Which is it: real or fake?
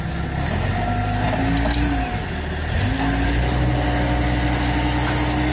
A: real